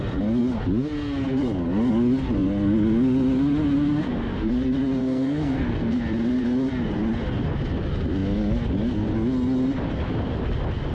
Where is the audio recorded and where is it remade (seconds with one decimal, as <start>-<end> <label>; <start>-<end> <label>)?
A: 0.0-5.0 recorded; 5.0-6.0 remade; 6.0-10.9 recorded